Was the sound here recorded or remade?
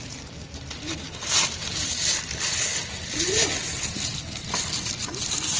recorded